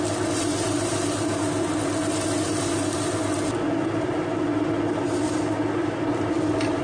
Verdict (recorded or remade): recorded